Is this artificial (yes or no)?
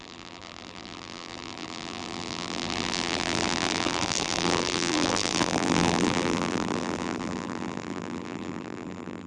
yes